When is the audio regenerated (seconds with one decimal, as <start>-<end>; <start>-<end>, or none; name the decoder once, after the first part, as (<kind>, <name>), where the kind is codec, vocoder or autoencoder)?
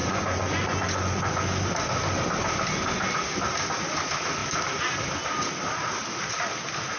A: 0.0-1.5 (vocoder, Vocos)